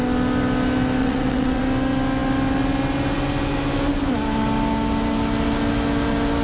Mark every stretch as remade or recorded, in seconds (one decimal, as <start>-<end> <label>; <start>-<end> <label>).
0.0-1.0 recorded; 1.0-1.6 remade; 1.6-6.4 recorded